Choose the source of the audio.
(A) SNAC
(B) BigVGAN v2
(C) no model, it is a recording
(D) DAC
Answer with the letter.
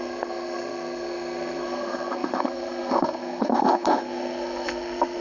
A